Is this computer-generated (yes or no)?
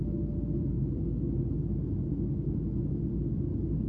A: no